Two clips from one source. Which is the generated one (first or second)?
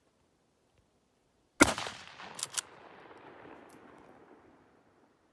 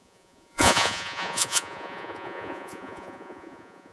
second